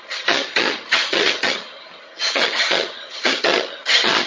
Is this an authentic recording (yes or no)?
no